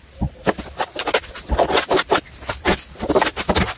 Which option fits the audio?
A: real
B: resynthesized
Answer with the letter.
A